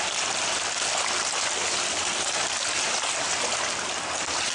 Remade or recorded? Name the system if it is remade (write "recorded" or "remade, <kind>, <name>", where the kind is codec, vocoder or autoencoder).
recorded